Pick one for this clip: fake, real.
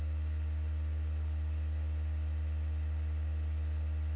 real